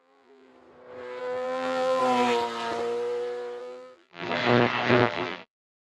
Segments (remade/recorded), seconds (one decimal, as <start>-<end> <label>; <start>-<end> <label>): 0.0-0.5 remade; 0.5-1.2 recorded; 1.2-2.0 remade; 2.0-3.6 recorded; 3.6-4.4 remade; 4.4-4.9 recorded; 4.9-5.9 remade